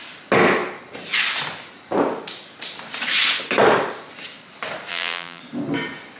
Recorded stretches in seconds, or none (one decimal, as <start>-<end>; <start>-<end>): 0.0-4.9; 5.4-6.2